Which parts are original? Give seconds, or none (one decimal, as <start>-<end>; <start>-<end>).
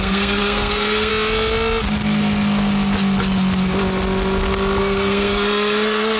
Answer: 1.1-4.8